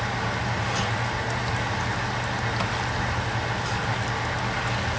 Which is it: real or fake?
real